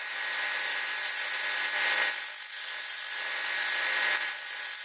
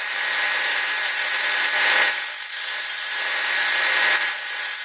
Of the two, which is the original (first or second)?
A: first